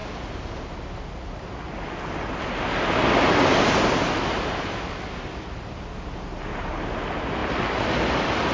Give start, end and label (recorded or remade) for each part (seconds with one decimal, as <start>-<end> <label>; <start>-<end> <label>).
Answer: 0.0-7.4 recorded; 7.4-8.0 remade; 8.0-8.5 recorded